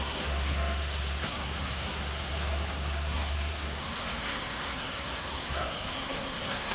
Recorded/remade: remade